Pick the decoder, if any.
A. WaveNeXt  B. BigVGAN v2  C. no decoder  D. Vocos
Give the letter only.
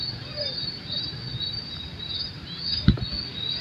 C